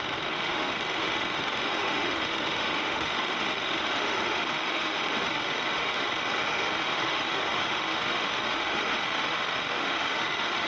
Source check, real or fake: fake